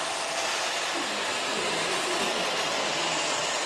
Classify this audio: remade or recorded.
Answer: recorded